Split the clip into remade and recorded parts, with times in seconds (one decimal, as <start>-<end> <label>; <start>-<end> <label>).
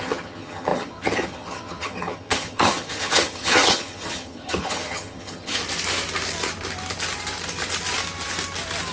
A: 0.0-5.6 remade; 5.6-8.9 recorded